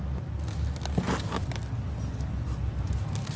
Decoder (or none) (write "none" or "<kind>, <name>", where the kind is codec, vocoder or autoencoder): none